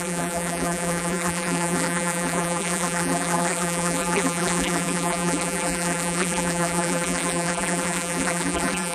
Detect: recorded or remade remade